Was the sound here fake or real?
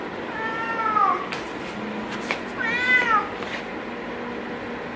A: real